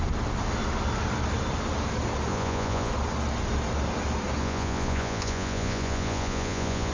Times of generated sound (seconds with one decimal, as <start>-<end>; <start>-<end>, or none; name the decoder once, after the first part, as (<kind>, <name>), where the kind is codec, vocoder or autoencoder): 2.3-2.9 (vocoder, Vocos); 4.4-6.9